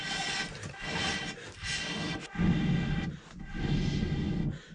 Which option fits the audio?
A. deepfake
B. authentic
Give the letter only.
B